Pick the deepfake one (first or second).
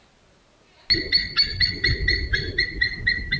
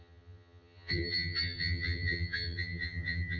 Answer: second